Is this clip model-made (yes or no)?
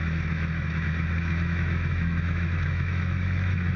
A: yes